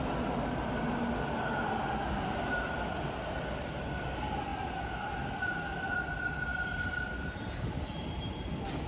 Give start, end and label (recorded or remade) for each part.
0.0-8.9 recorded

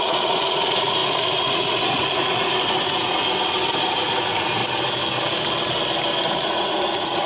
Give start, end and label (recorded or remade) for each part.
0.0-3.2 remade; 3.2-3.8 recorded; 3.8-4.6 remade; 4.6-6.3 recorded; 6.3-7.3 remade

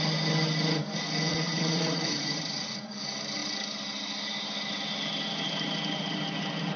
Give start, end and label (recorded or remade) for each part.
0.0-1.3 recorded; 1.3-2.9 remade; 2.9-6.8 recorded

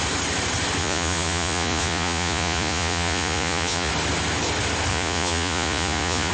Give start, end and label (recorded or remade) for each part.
0.0-0.8 recorded; 0.8-3.9 remade; 3.9-4.9 recorded; 4.9-6.3 remade

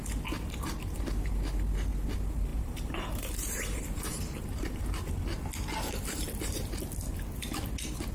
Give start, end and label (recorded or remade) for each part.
0.0-2.5 recorded; 2.5-4.8 remade; 4.8-8.1 recorded